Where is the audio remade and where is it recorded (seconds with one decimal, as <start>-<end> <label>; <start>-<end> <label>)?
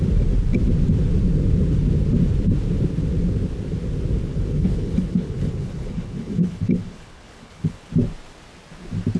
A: 0.0-4.3 recorded; 4.3-7.8 remade; 7.8-9.2 recorded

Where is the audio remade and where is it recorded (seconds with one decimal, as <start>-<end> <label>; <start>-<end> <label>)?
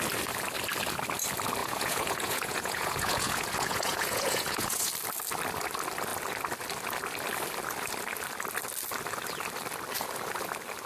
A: 0.0-1.6 recorded; 1.6-4.9 remade; 4.9-10.9 recorded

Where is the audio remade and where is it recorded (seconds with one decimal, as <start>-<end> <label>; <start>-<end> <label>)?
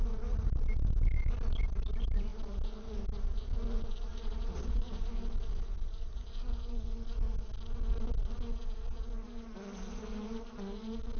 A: 0.0-4.1 recorded; 4.1-5.1 remade; 5.1-11.2 recorded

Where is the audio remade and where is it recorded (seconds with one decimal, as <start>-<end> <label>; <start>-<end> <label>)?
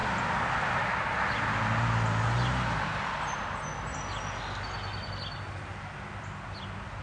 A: 0.0-7.0 recorded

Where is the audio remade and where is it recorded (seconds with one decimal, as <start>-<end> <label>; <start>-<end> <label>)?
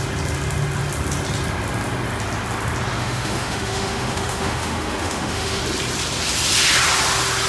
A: 0.0-3.0 recorded; 3.0-5.6 remade; 5.6-7.5 recorded